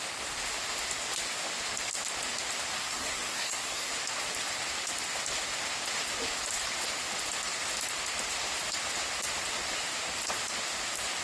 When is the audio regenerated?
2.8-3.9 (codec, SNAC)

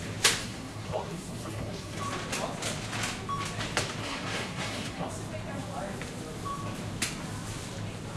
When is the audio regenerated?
0.4-2.0 (codec, SNAC); 4.0-5.1

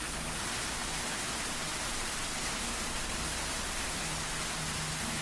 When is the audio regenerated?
none

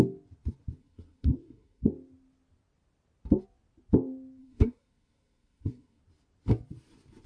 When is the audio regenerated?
0.8-1.9 (codec, SNAC); 4.4-6.0